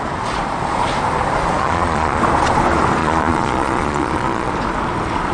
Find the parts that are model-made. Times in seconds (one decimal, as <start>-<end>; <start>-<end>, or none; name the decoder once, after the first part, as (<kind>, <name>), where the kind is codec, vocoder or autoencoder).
1.6-2.2 (vocoder, Vocos); 3.0-4.5